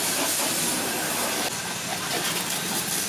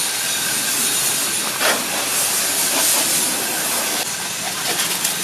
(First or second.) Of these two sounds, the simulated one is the second